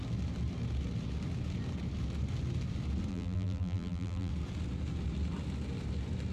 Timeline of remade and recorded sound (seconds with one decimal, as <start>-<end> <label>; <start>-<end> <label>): 0.0-3.1 recorded; 3.1-4.3 remade; 4.3-6.3 recorded